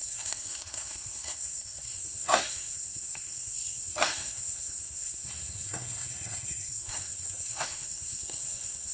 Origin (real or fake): fake